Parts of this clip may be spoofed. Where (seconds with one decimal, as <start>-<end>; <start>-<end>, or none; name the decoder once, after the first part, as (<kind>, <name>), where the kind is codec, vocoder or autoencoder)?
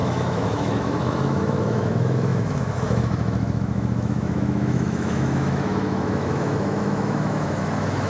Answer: 0.0-8.1 (autoencoder, DAC-VAE)